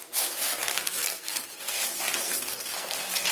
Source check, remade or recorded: remade